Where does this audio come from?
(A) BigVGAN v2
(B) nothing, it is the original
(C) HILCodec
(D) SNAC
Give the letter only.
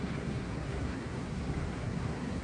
D